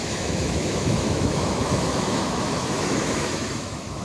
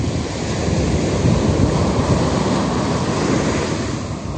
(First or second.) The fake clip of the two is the first